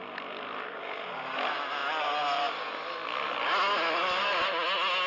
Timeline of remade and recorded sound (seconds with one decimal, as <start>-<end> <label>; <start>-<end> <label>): 0.0-5.1 recorded